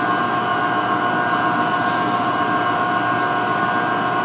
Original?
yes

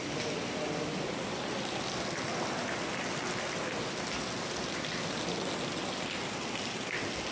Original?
yes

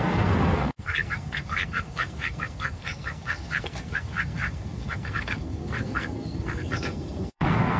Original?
no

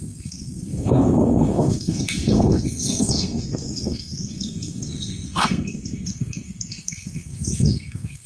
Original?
no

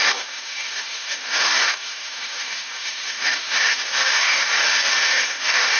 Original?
no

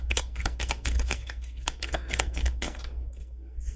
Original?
no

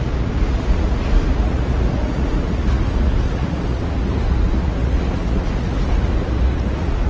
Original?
no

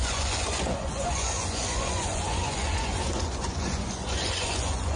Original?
no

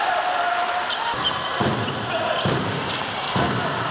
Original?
no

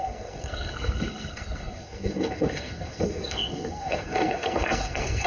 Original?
no